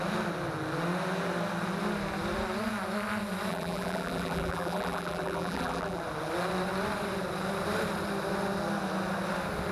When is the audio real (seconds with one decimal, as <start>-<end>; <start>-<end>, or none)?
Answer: 0.0-3.5; 6.0-9.7